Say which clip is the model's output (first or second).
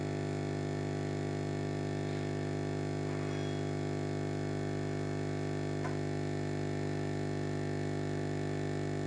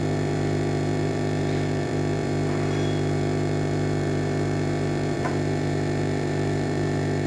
second